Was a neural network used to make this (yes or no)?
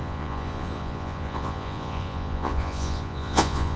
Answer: yes